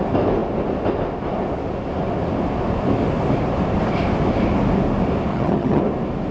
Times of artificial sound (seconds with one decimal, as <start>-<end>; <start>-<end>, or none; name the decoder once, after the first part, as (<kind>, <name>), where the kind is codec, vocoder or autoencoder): 5.3-5.8 (vocoder, HiFi-GAN)